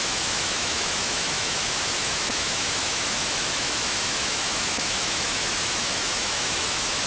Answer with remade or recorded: remade